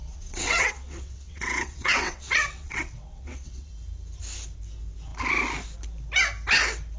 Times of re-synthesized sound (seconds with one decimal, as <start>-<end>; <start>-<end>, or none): 0.0-3.7